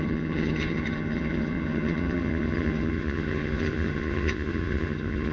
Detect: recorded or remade remade